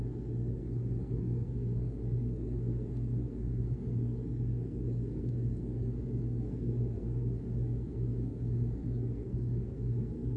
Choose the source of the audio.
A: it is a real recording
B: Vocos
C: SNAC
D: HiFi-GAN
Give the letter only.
C